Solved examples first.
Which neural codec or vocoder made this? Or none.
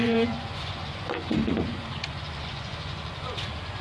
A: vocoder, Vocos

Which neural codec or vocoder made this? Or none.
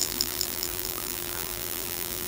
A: vocoder, BigVGAN v2